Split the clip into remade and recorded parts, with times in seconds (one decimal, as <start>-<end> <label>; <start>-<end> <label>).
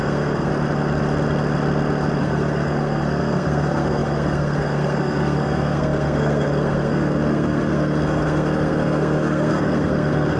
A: 0.0-0.5 remade; 0.5-2.2 recorded; 2.2-10.4 remade